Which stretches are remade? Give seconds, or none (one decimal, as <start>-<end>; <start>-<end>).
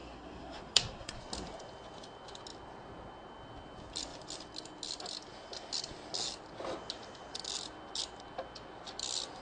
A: 0.0-1.2